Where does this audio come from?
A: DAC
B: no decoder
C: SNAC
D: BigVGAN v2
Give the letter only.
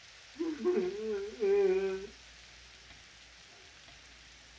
B